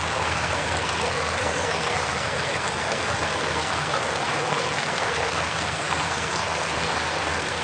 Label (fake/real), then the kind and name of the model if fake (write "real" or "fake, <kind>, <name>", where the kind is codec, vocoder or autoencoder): fake, codec, SNAC